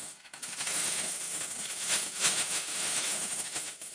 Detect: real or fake fake